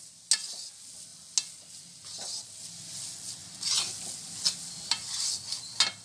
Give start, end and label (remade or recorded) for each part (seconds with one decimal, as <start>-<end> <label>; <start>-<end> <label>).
0.0-6.0 recorded